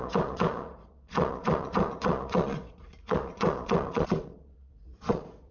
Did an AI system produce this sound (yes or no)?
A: yes